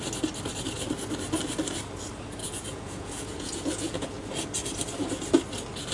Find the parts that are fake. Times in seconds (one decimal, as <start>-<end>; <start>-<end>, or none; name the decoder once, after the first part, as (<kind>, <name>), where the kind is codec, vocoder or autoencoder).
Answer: 2.4-4.1 (vocoder, Vocos)